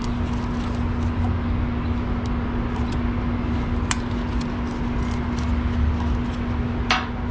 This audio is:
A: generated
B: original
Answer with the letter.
B